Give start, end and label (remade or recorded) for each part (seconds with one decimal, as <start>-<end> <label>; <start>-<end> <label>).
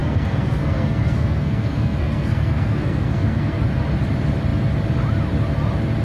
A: 0.0-3.6 remade; 3.6-6.0 recorded